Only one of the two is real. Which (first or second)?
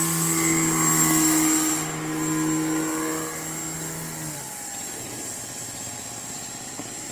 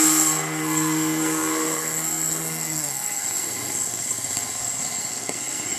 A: first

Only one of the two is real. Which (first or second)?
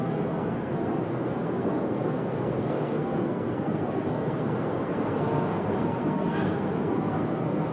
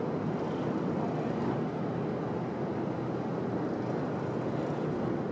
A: second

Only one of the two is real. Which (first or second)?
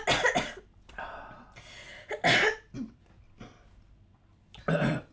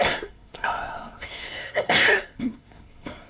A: first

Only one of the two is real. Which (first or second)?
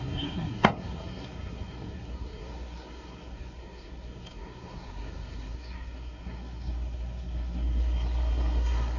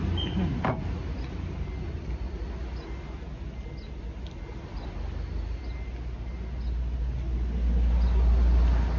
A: second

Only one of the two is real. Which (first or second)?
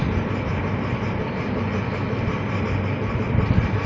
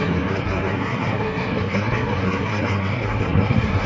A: first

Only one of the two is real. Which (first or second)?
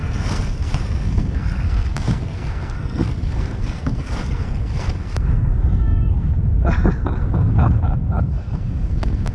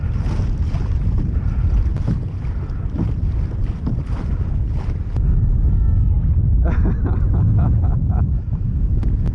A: second